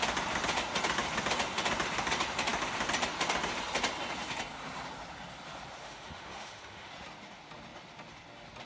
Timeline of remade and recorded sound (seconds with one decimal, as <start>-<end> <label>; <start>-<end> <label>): 0.0-5.8 recorded; 5.8-6.9 remade; 6.9-8.7 recorded

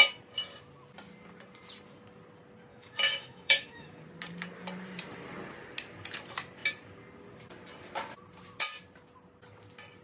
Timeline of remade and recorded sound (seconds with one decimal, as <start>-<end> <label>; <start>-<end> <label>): 0.0-2.7 recorded; 2.7-4.0 remade; 4.0-10.0 recorded

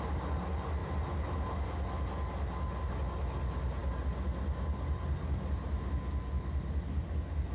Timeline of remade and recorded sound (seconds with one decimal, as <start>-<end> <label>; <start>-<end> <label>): 0.0-7.5 recorded

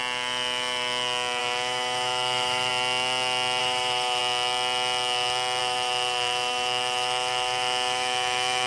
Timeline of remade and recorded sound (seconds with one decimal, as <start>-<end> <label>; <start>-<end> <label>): 0.0-1.4 recorded; 1.4-2.7 remade; 2.7-3.6 recorded; 3.6-4.2 remade; 4.2-5.6 recorded; 5.6-8.7 remade

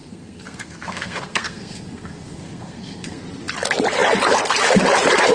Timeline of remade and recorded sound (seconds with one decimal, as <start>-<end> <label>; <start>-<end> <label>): 0.0-3.2 remade; 3.2-5.3 recorded

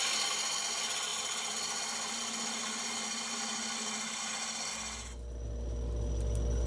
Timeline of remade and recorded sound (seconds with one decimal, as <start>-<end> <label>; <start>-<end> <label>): 0.0-6.7 recorded

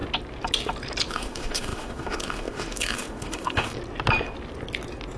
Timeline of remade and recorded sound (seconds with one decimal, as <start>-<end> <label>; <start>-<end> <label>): 0.0-1.1 recorded; 1.1-3.7 remade; 3.7-5.2 recorded